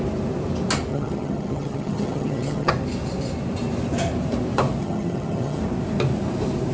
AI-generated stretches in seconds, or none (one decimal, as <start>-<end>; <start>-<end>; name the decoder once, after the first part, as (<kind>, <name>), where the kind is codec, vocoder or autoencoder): 0.9-2.7 (vocoder, HiFi-GAN); 4.8-5.6